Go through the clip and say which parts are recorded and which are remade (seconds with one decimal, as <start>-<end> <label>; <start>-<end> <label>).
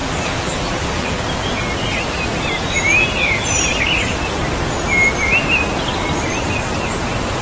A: 0.0-1.2 remade; 1.2-7.4 recorded